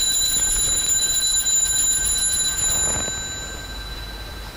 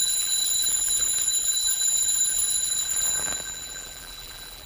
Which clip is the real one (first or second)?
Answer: first